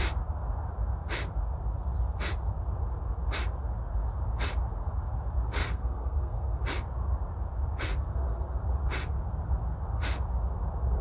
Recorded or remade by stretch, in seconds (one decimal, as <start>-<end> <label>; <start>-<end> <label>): 0.0-5.6 recorded; 5.6-6.6 remade; 6.6-11.0 recorded